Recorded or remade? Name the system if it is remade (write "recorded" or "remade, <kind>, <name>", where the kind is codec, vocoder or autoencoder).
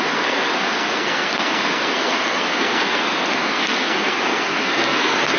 remade, codec, SNAC